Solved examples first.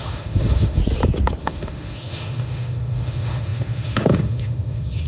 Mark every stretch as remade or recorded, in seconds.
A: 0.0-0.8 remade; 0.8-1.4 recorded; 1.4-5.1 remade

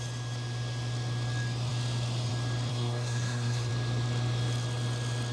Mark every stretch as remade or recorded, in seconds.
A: 0.0-2.7 recorded; 2.7-3.7 remade; 3.7-5.3 recorded